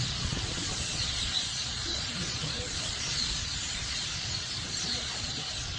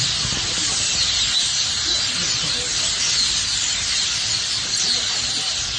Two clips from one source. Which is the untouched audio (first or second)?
second